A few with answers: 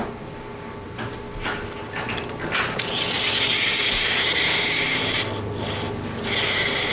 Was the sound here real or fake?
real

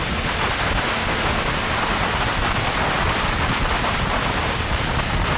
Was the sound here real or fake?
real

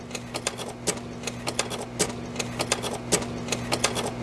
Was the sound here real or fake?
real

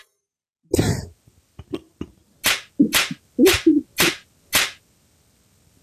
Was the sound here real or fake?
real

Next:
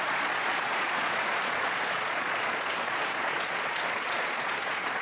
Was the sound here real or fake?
fake